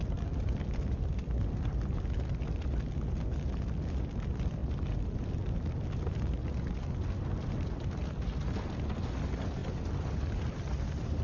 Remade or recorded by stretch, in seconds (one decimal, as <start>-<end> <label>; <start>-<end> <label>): 0.0-11.2 recorded